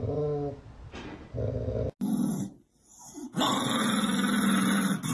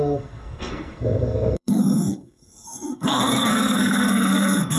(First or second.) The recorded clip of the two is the first